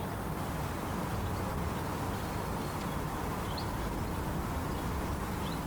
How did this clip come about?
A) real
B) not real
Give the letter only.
A